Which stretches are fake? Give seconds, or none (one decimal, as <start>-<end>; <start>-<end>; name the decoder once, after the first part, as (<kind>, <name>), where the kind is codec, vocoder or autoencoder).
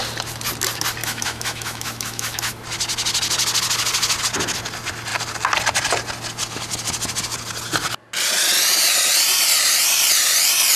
1.0-2.6 (autoencoder, DAC-VAE)